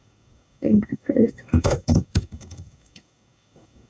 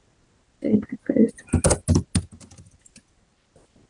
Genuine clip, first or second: second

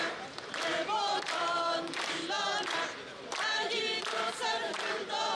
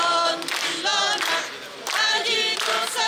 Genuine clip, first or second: second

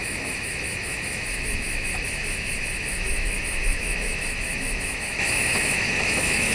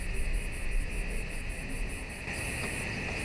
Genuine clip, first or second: second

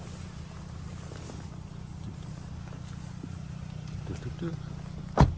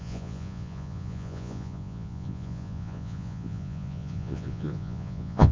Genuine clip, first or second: first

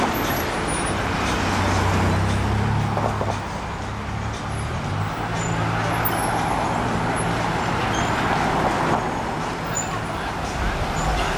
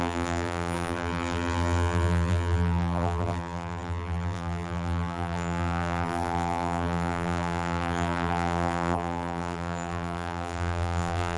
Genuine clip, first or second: first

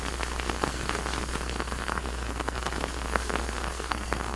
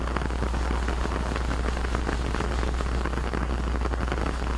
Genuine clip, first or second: second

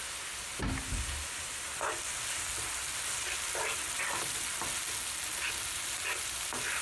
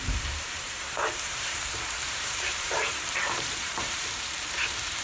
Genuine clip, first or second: first